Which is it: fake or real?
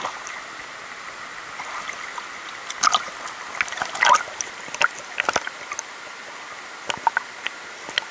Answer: real